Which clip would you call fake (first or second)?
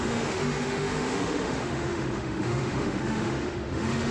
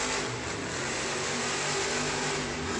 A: first